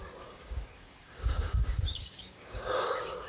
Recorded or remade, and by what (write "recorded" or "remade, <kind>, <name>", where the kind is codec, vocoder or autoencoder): remade, codec, DAC